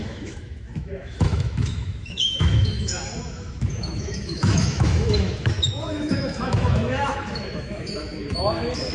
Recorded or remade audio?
remade